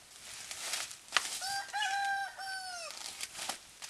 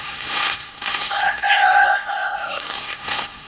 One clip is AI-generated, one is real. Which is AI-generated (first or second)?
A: second